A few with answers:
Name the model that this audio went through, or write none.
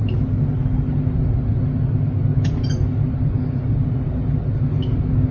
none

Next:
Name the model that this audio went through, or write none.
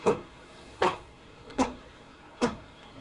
codec, SNAC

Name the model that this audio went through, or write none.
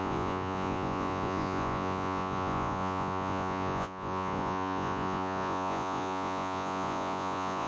vocoder, Vocos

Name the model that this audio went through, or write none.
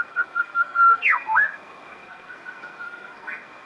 codec, SNAC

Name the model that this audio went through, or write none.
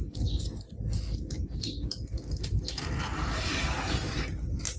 none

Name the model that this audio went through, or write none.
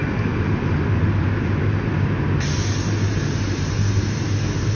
none